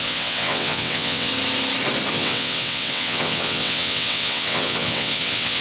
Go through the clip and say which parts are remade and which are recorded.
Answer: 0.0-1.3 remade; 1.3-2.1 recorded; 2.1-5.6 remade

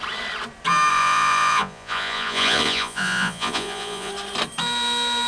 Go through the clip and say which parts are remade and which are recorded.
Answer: 0.0-0.9 recorded; 0.9-4.1 remade; 4.1-5.3 recorded

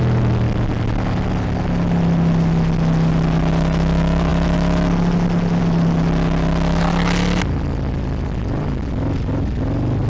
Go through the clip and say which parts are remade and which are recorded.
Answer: 0.0-10.1 recorded

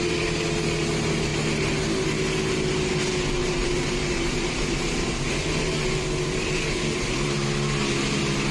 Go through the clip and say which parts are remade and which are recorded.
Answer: 0.0-3.4 recorded; 3.4-5.3 remade; 5.3-8.5 recorded

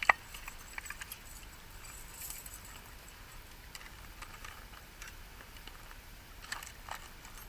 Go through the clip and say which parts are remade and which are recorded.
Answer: 0.0-2.2 recorded; 2.2-6.4 remade; 6.4-7.5 recorded

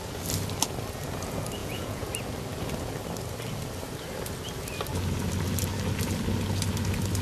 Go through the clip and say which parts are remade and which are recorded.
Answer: 0.0-1.6 recorded; 1.6-2.1 remade; 2.1-7.2 recorded

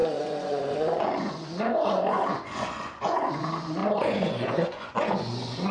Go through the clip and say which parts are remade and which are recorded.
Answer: 0.0-5.7 remade

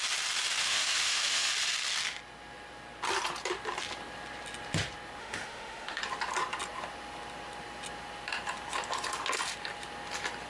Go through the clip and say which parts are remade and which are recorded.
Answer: 0.0-0.6 recorded; 0.6-1.5 remade; 1.5-5.2 recorded; 5.2-6.0 remade; 6.0-10.5 recorded